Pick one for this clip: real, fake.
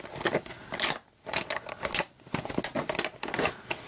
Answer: real